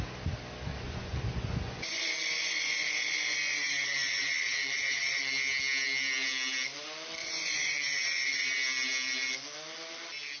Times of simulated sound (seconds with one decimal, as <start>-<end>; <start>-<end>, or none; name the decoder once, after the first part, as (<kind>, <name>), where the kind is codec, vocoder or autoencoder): 0.7-5.3 (vocoder, Vocos); 7.2-8.6